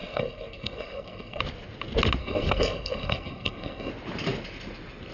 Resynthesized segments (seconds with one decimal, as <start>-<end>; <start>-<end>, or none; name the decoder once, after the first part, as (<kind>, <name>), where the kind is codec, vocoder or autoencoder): 0.0-1.4 (codec, SNAC); 2.2-3.9